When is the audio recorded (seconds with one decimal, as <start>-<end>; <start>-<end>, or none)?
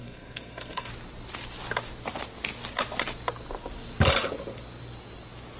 0.9-5.6